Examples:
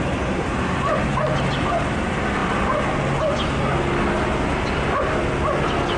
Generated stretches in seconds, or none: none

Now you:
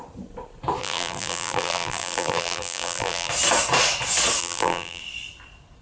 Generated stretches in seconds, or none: 0.8-3.3 (vocoder, BigVGAN v2); 4.4-5.0

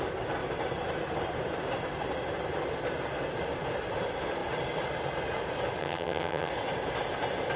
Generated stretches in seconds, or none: 5.8-6.5 (vocoder, HiFi-GAN)

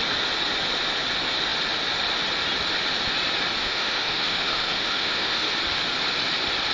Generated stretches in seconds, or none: 3.6-5.5 (autoencoder, DAC-VAE)

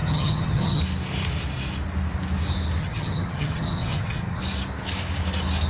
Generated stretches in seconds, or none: 0.0-0.8 (vocoder, HiFi-GAN); 2.8-4.4